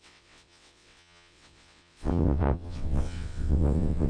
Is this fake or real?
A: fake